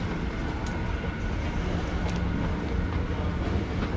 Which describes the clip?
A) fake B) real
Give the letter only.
B